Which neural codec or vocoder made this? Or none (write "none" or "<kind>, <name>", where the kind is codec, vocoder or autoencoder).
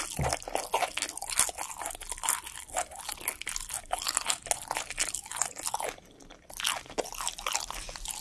none